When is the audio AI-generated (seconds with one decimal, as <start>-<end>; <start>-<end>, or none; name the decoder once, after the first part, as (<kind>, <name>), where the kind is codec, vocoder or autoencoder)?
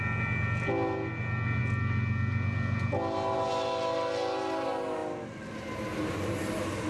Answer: none